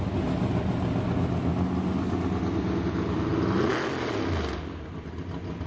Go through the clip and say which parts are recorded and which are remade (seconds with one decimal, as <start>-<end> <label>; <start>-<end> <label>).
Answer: 0.0-5.7 recorded